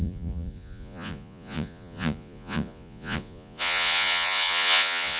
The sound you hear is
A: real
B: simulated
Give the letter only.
B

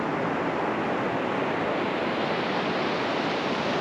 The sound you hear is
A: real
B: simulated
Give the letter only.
A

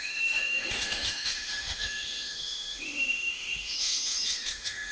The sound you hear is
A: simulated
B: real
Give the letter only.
A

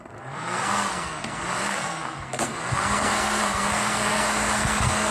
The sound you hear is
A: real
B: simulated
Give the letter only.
B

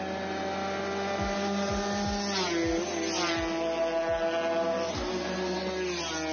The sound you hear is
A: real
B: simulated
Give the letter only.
A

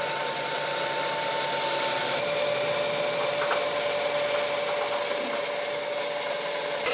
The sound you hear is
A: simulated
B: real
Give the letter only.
B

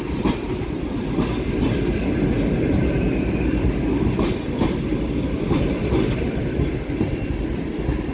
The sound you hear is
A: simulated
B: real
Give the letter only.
B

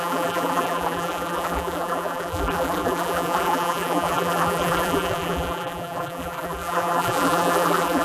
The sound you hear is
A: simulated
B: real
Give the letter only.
A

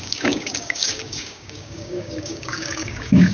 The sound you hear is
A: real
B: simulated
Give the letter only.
B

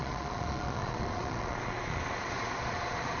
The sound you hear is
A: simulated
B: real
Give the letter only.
A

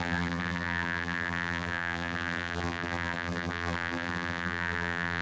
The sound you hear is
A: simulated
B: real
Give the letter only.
A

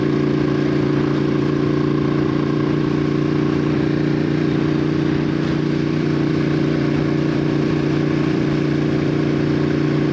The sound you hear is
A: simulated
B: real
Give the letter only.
A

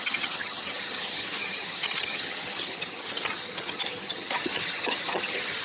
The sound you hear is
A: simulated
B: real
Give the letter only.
A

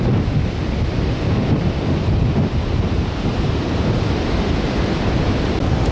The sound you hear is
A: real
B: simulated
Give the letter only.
A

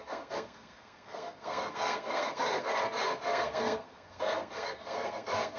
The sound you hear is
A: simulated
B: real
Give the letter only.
A